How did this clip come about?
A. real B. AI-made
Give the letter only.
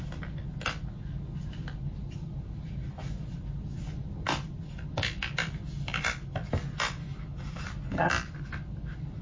A